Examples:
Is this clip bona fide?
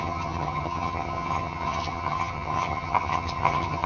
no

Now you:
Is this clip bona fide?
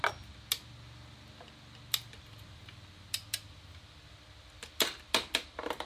yes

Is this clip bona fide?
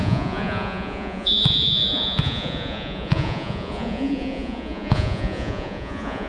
no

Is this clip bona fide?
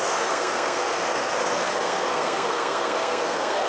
no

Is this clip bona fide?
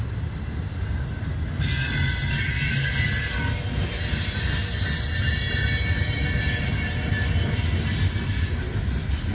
yes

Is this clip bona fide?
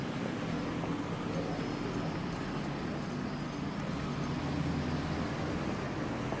yes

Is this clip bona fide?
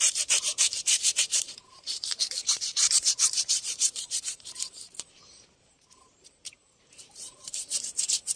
no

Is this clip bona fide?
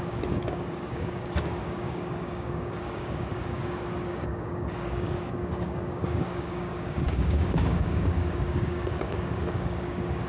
no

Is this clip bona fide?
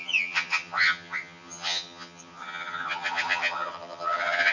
no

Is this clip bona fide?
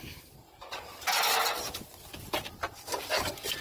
yes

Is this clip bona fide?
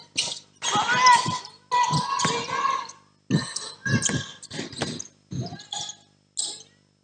yes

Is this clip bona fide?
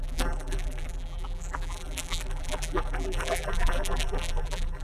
no